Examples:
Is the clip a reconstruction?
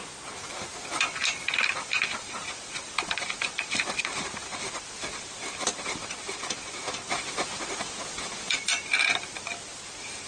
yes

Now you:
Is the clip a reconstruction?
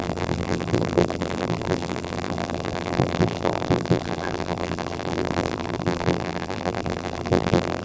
yes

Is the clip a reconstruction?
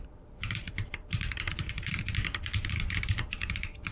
yes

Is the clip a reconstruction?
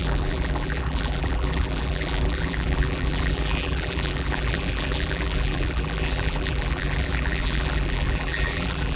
yes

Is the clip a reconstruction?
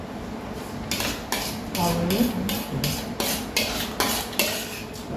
no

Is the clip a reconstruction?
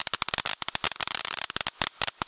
no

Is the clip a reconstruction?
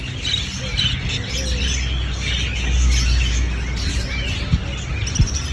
no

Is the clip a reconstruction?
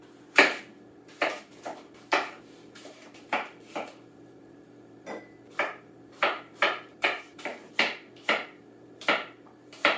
yes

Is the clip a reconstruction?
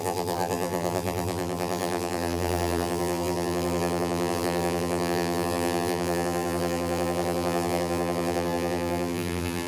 yes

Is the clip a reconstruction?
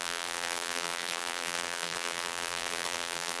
yes